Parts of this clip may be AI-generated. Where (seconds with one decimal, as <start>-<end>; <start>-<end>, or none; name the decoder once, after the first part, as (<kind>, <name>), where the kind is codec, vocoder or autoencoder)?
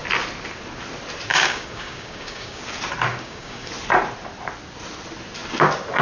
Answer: 1.3-2.6 (codec, DAC); 3.1-3.7